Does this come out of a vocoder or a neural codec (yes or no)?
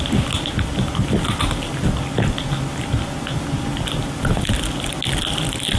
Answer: no